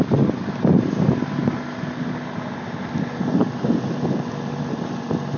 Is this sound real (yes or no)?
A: yes